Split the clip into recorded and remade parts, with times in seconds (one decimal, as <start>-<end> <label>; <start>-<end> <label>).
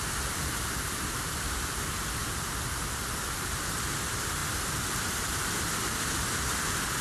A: 0.0-7.0 recorded